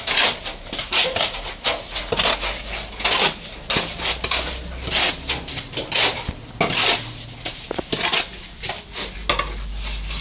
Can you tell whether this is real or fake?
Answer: real